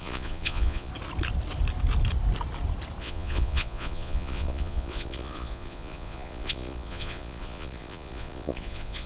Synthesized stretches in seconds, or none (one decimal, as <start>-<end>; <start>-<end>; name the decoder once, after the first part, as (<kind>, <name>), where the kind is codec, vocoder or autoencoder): 0.0-0.9 (vocoder, Vocos); 3.0-9.1